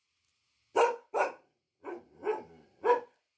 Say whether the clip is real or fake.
real